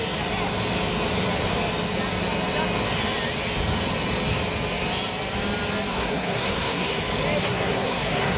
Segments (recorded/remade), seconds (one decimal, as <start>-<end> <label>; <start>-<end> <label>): 0.0-5.9 recorded; 5.9-7.0 remade; 7.0-7.4 recorded; 7.4-8.4 remade